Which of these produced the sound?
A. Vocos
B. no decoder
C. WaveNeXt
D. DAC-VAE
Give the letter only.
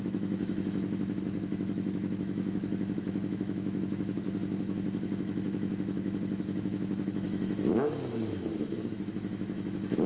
D